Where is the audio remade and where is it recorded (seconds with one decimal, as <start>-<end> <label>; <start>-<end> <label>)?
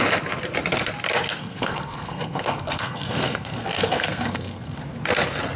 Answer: 0.0-1.4 recorded; 1.4-4.8 remade; 4.8-5.6 recorded